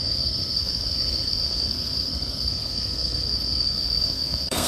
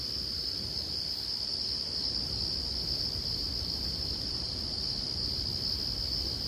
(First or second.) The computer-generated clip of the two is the first